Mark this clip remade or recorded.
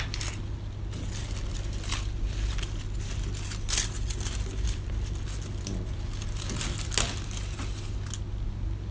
recorded